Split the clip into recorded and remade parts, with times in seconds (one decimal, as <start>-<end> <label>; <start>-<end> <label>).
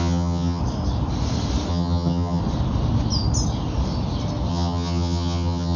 0.0-0.6 remade; 0.6-1.7 recorded; 1.7-2.4 remade; 2.4-4.5 recorded; 4.5-5.8 remade